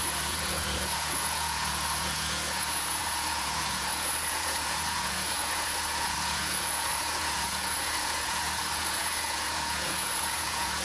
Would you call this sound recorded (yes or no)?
no